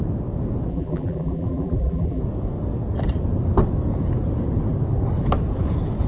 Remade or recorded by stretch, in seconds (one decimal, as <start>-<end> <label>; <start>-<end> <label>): 0.0-0.7 recorded; 0.7-2.2 remade; 2.2-6.1 recorded

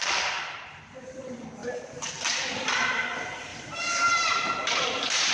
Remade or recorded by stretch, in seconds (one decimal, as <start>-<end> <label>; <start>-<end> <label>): 0.0-1.6 recorded; 1.6-2.2 remade; 2.2-3.5 recorded; 3.5-5.3 remade

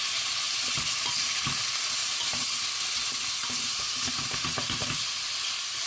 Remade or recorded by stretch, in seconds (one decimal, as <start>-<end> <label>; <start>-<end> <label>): 0.0-2.0 recorded; 2.0-4.0 remade; 4.0-5.9 recorded

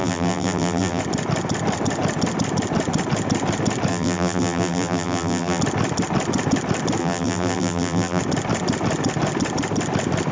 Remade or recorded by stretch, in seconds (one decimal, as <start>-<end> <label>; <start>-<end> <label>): 0.0-1.0 remade; 1.0-3.9 recorded; 3.9-5.6 remade; 5.6-7.0 recorded; 7.0-8.2 remade; 8.2-10.3 recorded

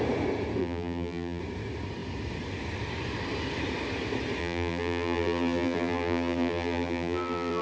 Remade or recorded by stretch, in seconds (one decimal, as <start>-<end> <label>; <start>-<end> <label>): 0.0-0.6 recorded; 0.6-1.4 remade; 1.4-4.4 recorded; 4.4-7.6 remade

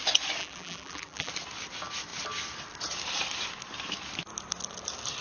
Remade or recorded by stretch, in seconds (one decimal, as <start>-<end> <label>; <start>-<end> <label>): 0.0-0.4 recorded; 0.4-1.3 remade; 1.3-5.2 recorded